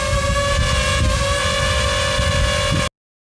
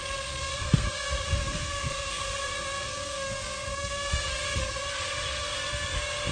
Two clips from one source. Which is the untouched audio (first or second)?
first